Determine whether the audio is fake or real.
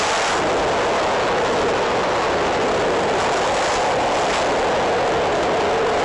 real